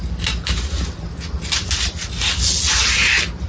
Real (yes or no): yes